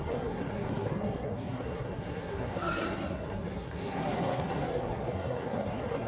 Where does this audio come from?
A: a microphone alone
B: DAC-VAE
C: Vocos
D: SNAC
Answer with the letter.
D